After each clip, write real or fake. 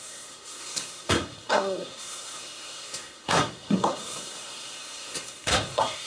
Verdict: fake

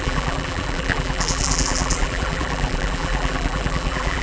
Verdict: fake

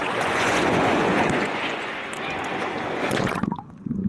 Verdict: fake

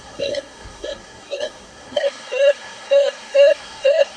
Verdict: fake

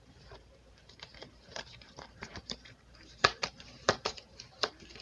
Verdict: fake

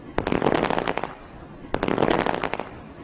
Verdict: real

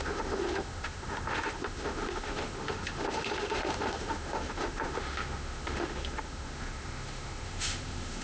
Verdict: fake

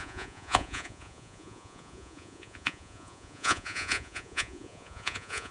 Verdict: fake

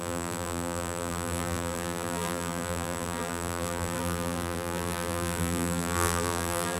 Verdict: fake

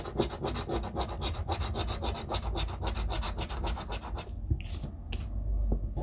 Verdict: real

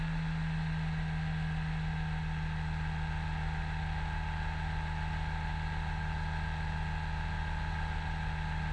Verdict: real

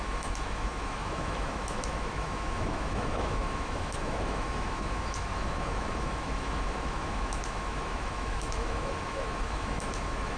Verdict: fake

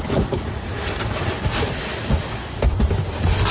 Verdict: real